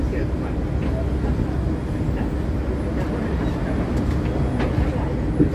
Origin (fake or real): real